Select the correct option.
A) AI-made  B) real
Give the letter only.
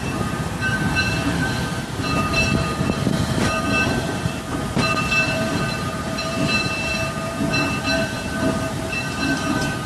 A